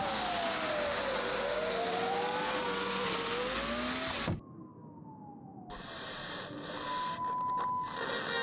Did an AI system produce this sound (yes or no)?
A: no